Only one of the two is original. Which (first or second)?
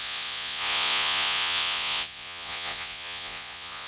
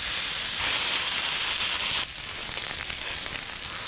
second